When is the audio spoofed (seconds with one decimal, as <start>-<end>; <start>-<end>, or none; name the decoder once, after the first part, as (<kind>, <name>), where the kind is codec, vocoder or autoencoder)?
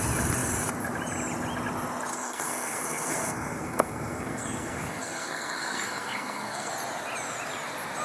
2.1-6.7 (codec, SNAC)